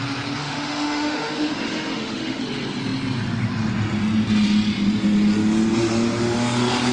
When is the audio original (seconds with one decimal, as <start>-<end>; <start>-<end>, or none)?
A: 0.0-0.4; 2.4-6.9